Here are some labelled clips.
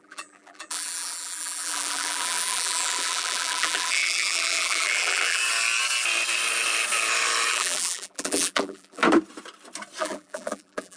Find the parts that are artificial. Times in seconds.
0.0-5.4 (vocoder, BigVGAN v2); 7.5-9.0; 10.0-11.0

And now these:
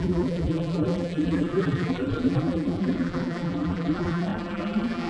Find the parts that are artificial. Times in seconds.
0.0-5.1 (vocoder, BigVGAN v2)

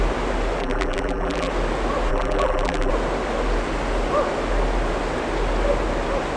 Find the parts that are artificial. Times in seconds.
0.6-1.5 (vocoder, BigVGAN v2); 2.1-2.9